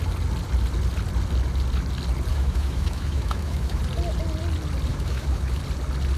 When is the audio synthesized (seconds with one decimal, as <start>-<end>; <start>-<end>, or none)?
2.3-3.8; 4.9-5.6